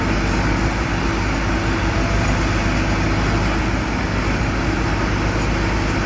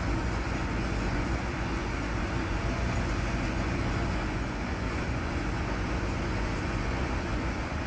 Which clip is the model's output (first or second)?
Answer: second